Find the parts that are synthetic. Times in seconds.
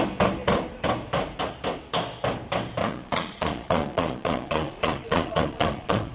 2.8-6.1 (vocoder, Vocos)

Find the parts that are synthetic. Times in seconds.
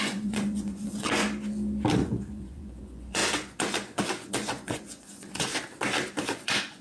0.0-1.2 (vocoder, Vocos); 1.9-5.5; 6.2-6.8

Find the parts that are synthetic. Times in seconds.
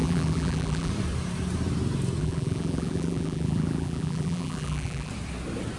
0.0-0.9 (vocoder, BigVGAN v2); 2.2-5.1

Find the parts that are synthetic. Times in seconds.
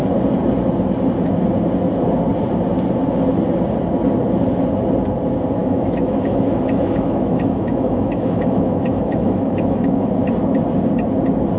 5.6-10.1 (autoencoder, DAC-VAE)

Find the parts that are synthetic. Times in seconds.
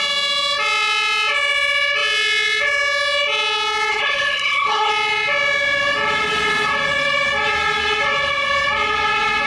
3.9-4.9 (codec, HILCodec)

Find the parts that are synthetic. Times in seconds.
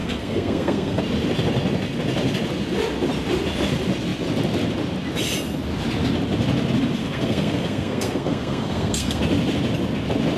0.0-1.0 (codec, SNAC); 7.0-9.2